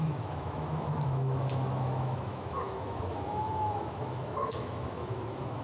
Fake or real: fake